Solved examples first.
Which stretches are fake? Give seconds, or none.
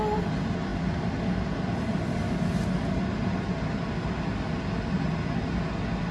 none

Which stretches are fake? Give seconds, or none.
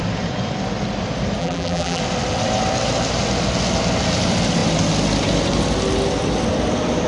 1.4-2.0 (vocoder, BigVGAN v2)